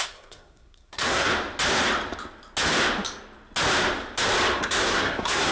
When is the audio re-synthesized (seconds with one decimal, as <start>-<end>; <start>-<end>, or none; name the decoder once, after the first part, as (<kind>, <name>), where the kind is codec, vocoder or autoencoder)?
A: 0.0-1.3 (codec, SNAC); 4.6-5.5

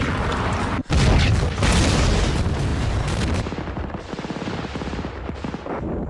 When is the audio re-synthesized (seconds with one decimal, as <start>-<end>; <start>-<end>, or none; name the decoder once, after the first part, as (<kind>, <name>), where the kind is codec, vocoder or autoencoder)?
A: 2.7-3.9 (vocoder, BigVGAN v2)

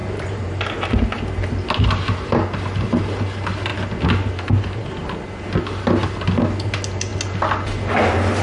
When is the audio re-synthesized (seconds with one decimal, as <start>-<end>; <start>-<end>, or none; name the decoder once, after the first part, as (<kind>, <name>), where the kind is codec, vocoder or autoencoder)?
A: 0.0-0.6 (vocoder, BigVGAN v2)